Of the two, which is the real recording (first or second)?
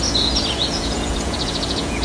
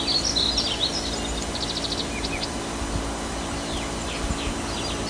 second